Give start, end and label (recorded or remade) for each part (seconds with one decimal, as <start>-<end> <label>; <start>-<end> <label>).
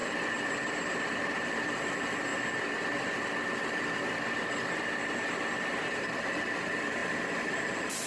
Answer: 0.0-2.3 remade; 2.3-5.6 recorded; 5.6-8.1 remade